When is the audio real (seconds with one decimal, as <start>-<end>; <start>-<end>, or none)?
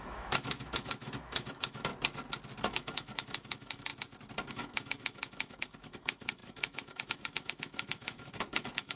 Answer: 1.9-2.6; 3.9-4.5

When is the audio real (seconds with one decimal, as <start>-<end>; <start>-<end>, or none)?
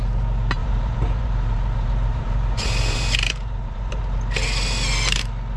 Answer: 0.0-0.6; 4.0-5.6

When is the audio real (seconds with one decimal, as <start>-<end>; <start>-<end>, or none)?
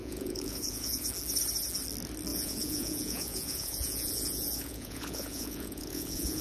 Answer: 1.1-2.3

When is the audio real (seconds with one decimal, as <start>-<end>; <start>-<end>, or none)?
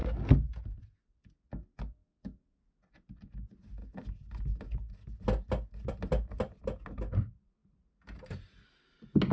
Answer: 0.0-9.3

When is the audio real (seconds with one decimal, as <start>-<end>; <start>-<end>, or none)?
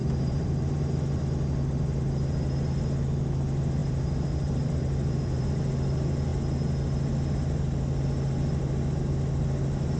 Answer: 1.2-3.8; 5.5-10.0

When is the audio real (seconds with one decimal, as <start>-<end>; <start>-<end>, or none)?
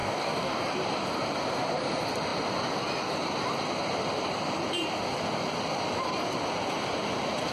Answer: 0.6-7.5